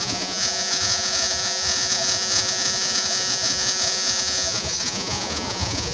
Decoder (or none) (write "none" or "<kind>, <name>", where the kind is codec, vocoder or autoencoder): vocoder, Vocos